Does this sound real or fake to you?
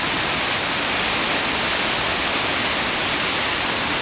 real